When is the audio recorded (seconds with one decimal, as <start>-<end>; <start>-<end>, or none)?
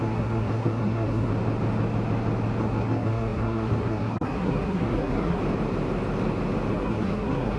1.3-2.6; 5.4-6.7